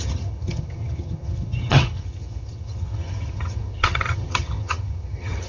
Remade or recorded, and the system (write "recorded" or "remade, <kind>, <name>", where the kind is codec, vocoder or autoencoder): remade, vocoder, HiFi-GAN